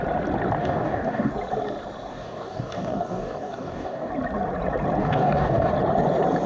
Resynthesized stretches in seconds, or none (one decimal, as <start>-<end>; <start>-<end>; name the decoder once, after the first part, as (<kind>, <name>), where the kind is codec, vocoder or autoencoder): 0.6-1.3 (codec, DAC); 2.1-4.1; 5.0-5.7